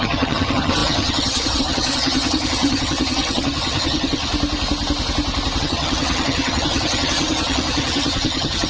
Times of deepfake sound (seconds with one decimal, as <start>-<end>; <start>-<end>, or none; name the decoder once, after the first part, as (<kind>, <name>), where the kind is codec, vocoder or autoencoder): 0.0-4.3 (vocoder, HiFi-GAN); 5.6-8.7